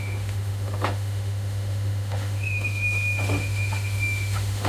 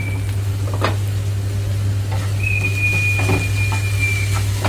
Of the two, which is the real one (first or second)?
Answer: second